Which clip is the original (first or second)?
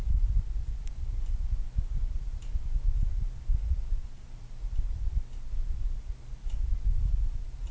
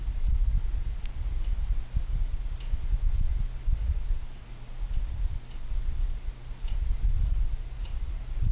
second